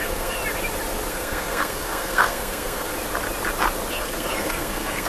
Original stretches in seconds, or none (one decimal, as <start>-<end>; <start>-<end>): 0.4-1.1; 2.9-3.9